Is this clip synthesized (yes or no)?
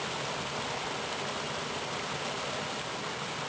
no